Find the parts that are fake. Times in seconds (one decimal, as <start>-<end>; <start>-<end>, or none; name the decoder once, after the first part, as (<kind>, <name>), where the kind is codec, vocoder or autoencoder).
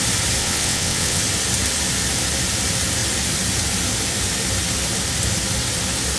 0.4-1.2 (vocoder, WaveNeXt)